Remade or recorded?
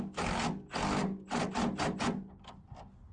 recorded